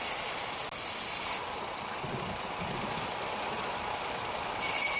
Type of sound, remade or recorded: recorded